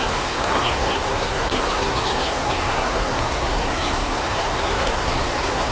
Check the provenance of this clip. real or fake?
fake